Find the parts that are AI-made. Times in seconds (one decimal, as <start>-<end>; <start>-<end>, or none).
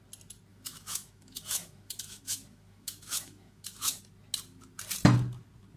0.5-4.0